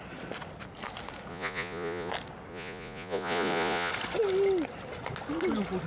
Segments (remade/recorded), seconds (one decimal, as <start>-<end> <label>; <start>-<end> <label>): 0.0-1.3 recorded; 1.3-2.1 remade; 2.1-2.5 recorded; 2.5-3.9 remade; 3.9-5.9 recorded